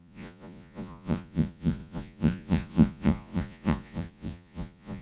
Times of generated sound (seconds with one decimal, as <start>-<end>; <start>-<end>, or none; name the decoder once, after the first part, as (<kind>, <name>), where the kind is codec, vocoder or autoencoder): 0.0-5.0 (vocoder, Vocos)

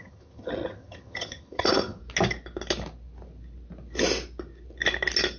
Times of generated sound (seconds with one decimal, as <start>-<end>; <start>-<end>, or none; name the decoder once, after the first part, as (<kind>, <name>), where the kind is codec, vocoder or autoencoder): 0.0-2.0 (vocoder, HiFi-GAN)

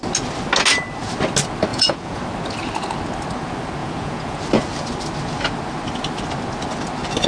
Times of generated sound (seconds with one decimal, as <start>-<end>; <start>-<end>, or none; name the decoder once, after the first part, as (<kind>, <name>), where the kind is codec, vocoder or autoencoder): 1.7-2.2 (vocoder, Vocos); 3.8-4.4